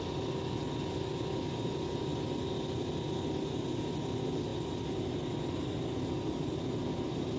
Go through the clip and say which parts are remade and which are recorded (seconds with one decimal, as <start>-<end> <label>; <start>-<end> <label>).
0.0-7.4 recorded